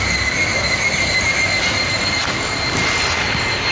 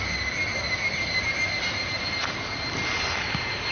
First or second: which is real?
second